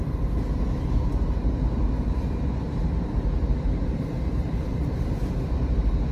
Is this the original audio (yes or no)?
no